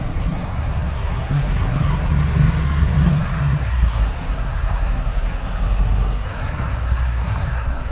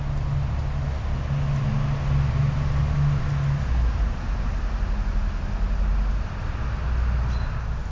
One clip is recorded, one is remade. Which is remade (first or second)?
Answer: first